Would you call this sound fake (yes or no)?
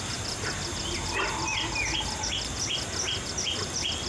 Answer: no